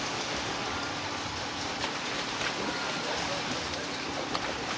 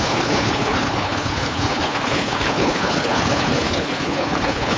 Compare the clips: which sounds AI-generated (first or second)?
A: second